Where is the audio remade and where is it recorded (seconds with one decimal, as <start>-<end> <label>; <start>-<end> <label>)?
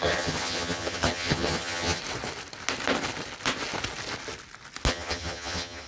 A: 0.0-2.0 remade; 2.0-4.9 recorded; 4.9-5.9 remade